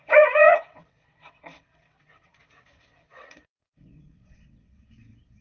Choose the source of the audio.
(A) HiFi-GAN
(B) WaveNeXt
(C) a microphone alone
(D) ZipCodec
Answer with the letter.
B